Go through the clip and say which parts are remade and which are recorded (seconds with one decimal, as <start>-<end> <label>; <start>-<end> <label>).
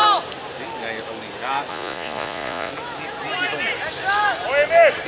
0.0-1.7 recorded; 1.7-2.7 remade; 2.7-5.1 recorded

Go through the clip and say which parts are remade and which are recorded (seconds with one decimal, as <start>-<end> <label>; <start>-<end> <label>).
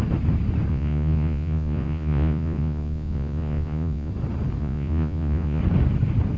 0.0-0.7 recorded; 0.7-4.1 remade; 4.1-4.6 recorded; 4.6-5.6 remade; 5.6-6.4 recorded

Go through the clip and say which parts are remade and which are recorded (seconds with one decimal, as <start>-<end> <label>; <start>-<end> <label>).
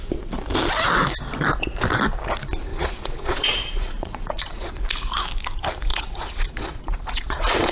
0.0-2.7 recorded; 2.7-4.7 remade; 4.7-5.9 recorded; 5.9-7.7 remade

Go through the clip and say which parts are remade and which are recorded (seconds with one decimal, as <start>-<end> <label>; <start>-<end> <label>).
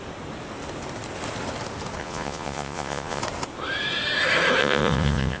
0.0-2.0 recorded; 2.0-3.2 remade; 3.2-4.6 recorded; 4.6-5.4 remade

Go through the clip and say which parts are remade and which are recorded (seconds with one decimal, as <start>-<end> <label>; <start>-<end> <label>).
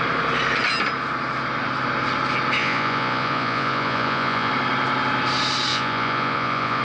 0.0-2.6 recorded; 2.6-4.5 remade; 4.5-5.7 recorded; 5.7-6.8 remade